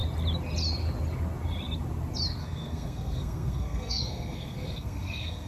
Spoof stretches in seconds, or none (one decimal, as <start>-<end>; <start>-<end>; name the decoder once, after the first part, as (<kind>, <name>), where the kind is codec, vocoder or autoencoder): 2.4-5.5 (codec, SNAC)

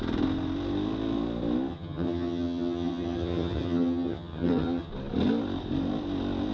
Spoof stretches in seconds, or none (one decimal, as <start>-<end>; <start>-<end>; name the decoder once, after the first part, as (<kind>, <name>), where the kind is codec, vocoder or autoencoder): 1.7-4.9 (vocoder, HiFi-GAN)